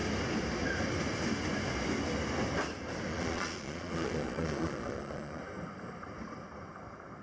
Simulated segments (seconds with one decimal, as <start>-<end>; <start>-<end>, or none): 3.1-5.4